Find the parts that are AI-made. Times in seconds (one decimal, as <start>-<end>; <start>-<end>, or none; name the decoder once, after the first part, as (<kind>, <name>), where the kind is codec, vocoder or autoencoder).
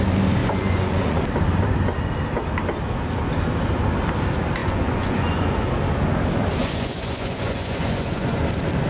0.4-1.2 (vocoder, Vocos); 4.6-5.7; 6.6-8.4